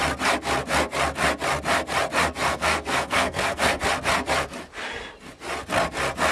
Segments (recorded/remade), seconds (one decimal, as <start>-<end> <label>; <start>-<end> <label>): 0.0-2.5 recorded; 2.5-3.8 remade; 3.8-6.3 recorded